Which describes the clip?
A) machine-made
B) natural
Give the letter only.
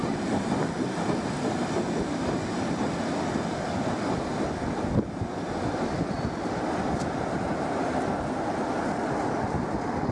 B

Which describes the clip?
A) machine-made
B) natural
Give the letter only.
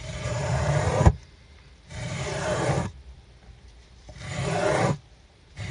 A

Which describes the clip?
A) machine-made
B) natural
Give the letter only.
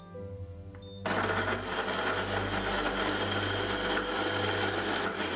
B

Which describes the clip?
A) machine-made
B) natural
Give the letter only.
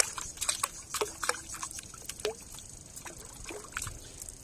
B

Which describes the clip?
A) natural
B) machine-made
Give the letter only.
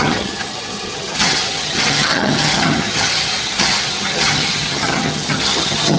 B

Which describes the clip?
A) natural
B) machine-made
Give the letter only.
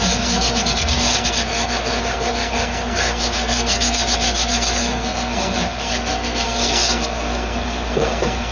B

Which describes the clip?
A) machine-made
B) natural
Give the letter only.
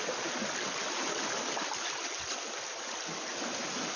B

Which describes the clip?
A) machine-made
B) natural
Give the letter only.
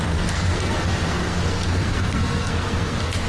A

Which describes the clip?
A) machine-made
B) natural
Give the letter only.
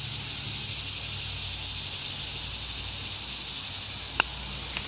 B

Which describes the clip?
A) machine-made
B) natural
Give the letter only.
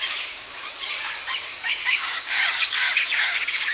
A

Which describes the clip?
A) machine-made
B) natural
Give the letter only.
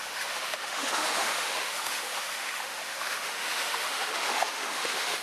A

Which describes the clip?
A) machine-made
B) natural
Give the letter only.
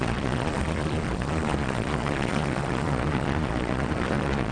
A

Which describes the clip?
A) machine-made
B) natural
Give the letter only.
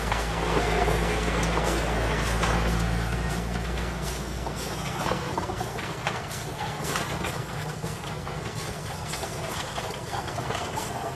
A